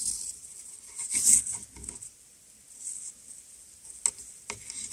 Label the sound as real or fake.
real